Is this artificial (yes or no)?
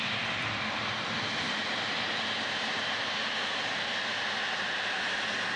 yes